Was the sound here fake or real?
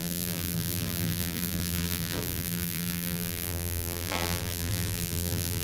fake